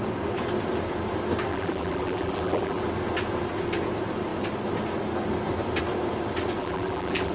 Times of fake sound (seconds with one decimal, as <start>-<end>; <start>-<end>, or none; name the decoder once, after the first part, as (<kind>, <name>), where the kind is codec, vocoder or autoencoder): 1.5-2.8 (vocoder, BigVGAN v2); 6.6-7.3